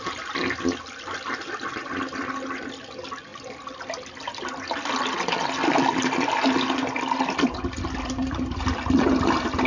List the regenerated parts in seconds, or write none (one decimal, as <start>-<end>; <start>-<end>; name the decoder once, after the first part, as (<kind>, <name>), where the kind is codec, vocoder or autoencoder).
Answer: none